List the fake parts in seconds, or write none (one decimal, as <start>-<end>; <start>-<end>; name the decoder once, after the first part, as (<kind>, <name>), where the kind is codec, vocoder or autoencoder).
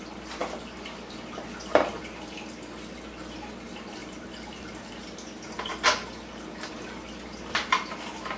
4.0-5.0 (vocoder, BigVGAN v2)